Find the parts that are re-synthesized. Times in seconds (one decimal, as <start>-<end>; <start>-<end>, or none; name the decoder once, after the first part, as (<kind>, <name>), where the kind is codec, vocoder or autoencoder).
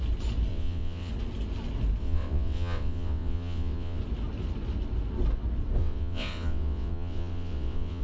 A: 0.5-1.1 (vocoder, WaveNeXt); 2.0-4.0; 5.8-8.0